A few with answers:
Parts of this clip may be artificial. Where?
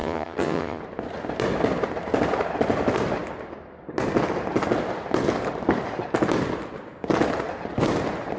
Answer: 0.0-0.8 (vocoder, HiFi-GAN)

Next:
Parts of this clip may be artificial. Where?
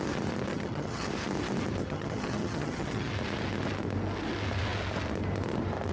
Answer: 0.5-1.1 (vocoder, HiFi-GAN); 1.8-3.1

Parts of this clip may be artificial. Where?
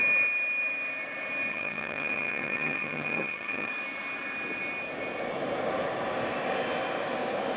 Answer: 1.5-3.7 (vocoder, HiFi-GAN)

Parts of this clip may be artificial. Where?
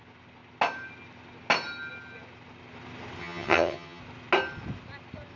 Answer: 3.2-4.0 (vocoder, HiFi-GAN)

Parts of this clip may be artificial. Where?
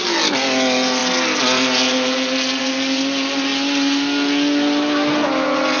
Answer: none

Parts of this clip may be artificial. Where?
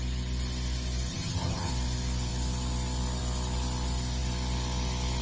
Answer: 1.1-1.7 (vocoder, HiFi-GAN)